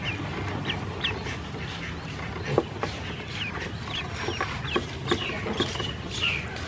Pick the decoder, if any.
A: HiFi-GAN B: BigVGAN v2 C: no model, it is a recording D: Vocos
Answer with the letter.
C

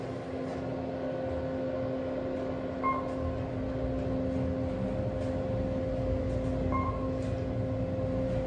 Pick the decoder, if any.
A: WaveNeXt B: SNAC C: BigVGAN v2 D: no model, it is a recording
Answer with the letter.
D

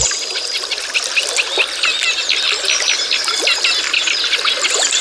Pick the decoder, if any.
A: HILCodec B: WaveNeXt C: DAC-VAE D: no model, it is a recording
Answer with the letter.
D